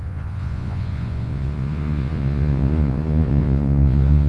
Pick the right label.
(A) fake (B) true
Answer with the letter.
A